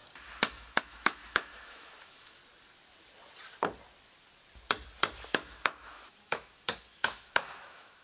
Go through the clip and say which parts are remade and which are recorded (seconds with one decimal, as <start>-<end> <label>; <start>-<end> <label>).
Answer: 0.0-0.8 recorded; 0.8-2.4 remade; 2.4-5.3 recorded; 5.3-8.0 remade